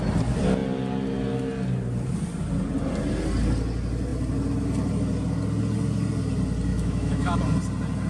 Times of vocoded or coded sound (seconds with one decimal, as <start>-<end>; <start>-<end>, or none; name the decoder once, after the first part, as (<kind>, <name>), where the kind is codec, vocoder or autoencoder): 6.7-7.4 (autoencoder, DAC-VAE)